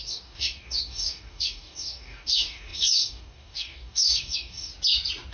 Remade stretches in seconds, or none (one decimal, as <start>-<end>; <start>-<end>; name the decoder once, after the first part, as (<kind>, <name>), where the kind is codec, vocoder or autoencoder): 0.0-4.7 (codec, DAC)